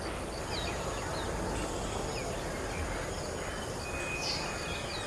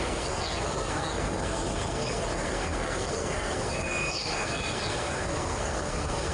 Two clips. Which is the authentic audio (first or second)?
first